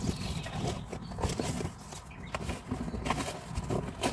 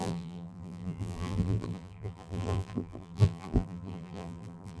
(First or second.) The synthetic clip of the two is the second